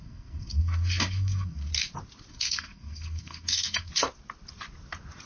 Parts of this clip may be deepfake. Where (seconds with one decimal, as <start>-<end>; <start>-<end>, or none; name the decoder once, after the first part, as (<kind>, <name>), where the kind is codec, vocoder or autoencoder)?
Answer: 0.0-1.7 (codec, SNAC); 2.3-3.9